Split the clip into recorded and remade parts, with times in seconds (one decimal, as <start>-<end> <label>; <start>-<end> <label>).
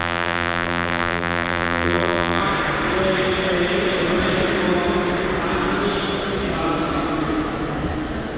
0.0-2.4 remade; 2.4-8.4 recorded